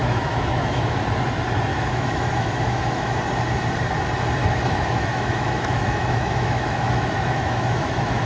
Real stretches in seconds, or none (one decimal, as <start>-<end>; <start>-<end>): 1.0-1.7; 3.2-4.4